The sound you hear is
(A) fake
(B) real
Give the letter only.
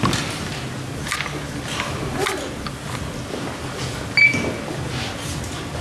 B